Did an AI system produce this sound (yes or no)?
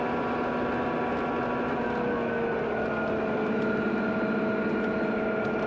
no